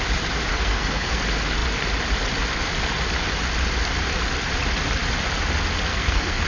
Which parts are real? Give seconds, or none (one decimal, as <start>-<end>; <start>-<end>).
0.0-0.5; 1.2-5.9

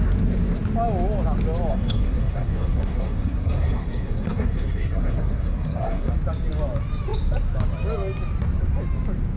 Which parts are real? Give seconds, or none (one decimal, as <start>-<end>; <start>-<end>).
0.0-1.7; 6.1-9.4

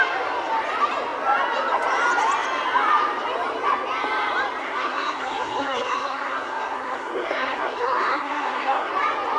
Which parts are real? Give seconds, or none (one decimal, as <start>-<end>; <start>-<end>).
0.0-4.6; 8.9-9.4

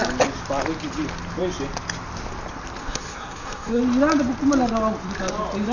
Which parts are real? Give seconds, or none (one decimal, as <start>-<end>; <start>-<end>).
0.0-2.8; 3.8-5.7

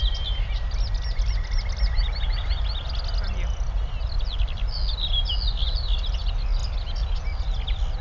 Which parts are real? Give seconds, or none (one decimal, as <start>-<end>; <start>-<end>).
0.0-8.0

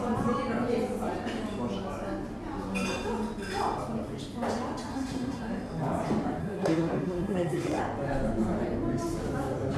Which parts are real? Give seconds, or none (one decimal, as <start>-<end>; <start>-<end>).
0.0-4.9; 5.5-6.4; 7.8-9.8

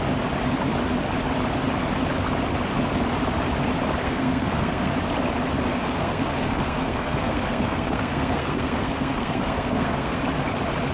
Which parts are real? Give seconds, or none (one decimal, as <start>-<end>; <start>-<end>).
0.0-4.0; 4.9-5.7; 10.2-10.9